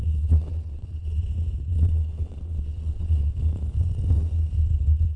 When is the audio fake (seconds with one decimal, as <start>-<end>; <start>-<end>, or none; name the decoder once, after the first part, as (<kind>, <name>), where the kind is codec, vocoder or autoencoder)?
0.0-1.2 (vocoder, WaveNeXt); 1.7-3.3